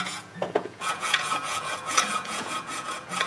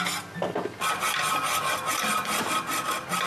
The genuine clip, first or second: second